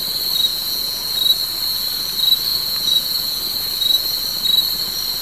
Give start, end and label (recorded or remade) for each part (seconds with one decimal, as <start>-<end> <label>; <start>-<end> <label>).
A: 0.0-0.5 recorded; 0.5-1.1 remade; 1.1-2.5 recorded; 2.5-3.4 remade; 3.4-5.2 recorded